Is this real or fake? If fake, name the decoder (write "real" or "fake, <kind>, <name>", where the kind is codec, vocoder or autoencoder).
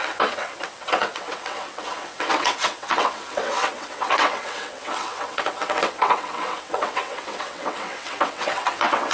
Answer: fake, vocoder, WaveNeXt